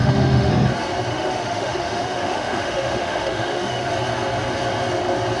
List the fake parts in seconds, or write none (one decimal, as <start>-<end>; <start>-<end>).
0.0-0.5; 1.1-3.9

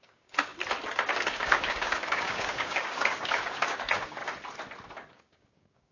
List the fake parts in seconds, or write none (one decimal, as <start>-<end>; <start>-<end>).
0.0-0.5; 1.1-4.2; 5.1-5.9

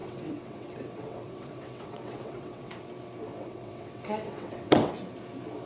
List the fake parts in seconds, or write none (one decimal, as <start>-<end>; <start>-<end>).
0.0-2.7; 3.3-4.9

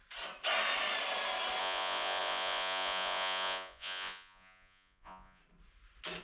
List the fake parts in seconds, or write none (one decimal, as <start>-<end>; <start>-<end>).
1.6-5.4

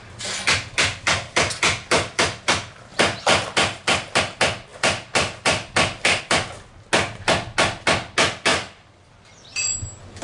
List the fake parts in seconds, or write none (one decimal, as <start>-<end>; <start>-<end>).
2.9-4.2; 4.7-6.2; 8.5-9.6

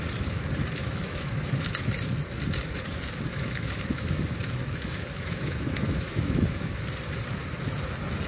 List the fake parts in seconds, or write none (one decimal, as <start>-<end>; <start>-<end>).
0.8-1.8; 3.3-6.8